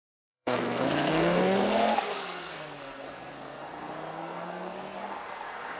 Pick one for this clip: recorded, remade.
remade